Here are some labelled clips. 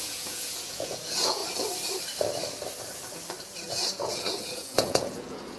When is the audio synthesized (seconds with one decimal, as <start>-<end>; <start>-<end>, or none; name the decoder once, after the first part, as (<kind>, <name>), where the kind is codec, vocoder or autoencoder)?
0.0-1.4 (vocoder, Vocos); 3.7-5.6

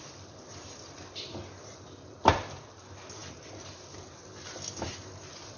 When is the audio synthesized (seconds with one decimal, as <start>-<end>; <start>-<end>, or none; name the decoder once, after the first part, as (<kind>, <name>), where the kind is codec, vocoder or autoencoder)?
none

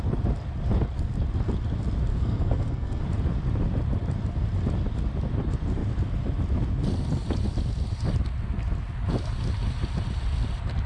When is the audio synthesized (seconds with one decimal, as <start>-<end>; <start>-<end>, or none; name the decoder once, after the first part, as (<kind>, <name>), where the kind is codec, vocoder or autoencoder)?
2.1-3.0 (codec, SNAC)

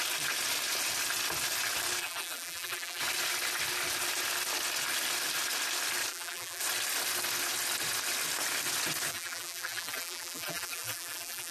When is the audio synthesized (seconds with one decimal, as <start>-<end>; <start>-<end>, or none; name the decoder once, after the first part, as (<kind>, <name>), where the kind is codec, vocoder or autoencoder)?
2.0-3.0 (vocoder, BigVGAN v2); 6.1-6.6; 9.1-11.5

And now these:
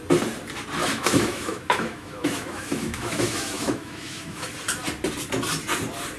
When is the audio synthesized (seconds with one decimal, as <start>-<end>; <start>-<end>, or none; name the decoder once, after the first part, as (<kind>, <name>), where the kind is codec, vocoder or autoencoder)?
0.8-4.5 (autoencoder, DAC-VAE)

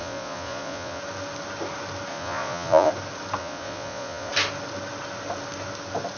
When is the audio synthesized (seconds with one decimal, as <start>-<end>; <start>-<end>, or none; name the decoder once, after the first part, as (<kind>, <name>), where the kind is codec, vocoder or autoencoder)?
0.0-1.0 (vocoder, Vocos); 2.1-2.9; 3.4-4.3